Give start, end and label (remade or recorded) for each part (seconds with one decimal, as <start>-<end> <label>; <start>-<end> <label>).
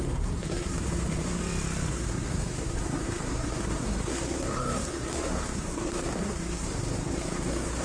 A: 0.0-1.4 remade; 1.4-1.9 recorded; 1.9-7.8 remade